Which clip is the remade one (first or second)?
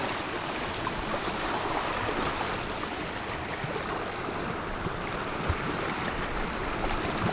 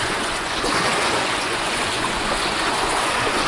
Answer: second